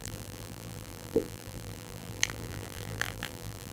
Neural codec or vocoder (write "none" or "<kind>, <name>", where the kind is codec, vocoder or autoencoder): vocoder, BigVGAN v2